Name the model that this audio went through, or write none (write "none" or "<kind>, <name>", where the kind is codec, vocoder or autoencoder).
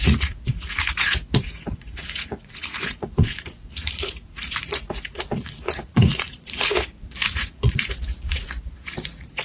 vocoder, Vocos